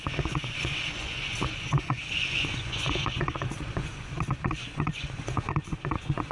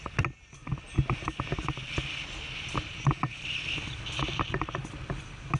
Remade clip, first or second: first